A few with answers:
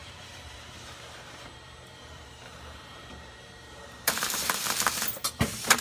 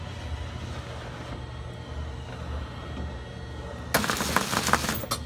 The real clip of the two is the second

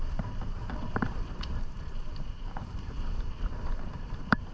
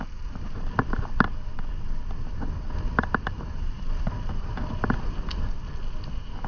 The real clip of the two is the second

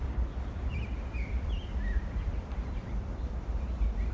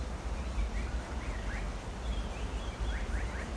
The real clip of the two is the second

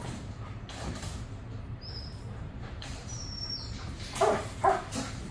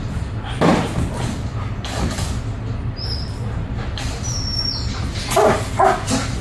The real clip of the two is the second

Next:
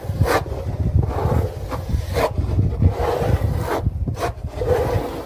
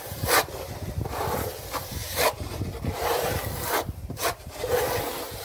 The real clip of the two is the first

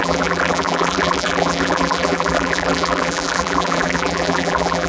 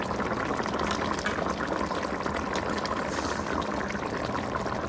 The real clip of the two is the second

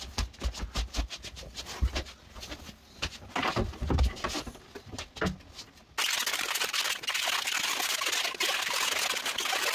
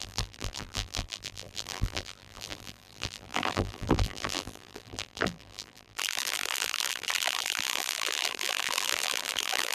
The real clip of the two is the first